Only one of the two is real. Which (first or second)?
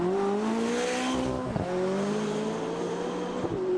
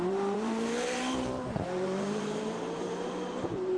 first